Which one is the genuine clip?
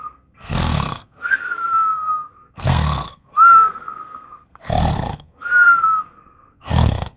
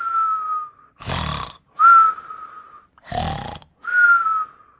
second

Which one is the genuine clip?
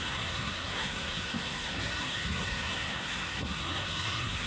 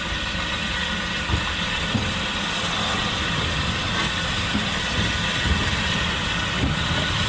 second